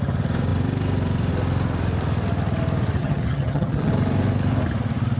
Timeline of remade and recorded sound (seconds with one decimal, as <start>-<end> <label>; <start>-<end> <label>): 0.0-3.0 recorded; 3.0-3.9 remade; 3.9-5.2 recorded